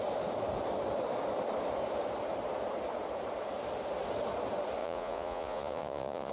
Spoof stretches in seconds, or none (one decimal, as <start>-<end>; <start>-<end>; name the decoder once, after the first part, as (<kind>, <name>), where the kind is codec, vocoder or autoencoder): 4.8-6.3 (vocoder, Vocos)